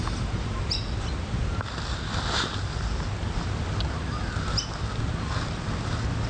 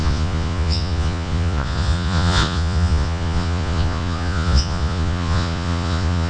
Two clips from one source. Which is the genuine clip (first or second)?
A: first